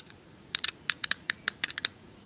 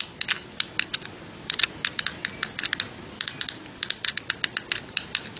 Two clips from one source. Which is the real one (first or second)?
second